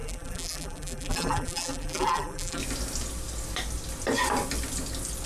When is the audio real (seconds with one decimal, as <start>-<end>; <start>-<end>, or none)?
2.6-5.3